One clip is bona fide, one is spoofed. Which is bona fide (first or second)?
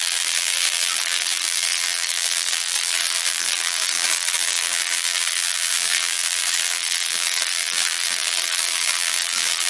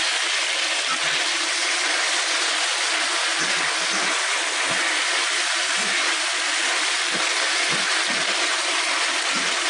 second